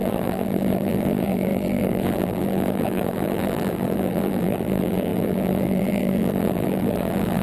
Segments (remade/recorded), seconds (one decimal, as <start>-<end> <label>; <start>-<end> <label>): 0.0-7.4 remade